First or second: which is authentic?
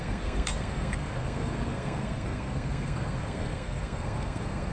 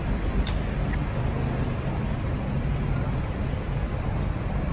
second